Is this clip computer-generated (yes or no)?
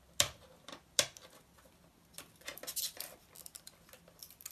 no